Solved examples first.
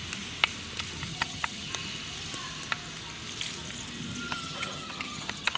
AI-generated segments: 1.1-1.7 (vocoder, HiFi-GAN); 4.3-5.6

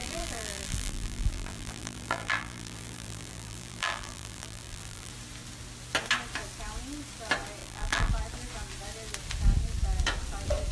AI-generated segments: 0.0-5.1 (vocoder, BigVGAN v2); 7.6-8.1

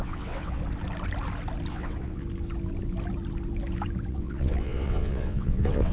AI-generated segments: 0.0-0.6 (vocoder, WaveNeXt); 1.7-2.2; 4.1-5.9

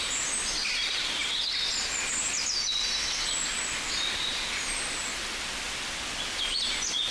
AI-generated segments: none

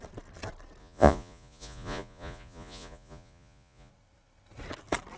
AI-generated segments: 0.8-3.9 (vocoder, Vocos)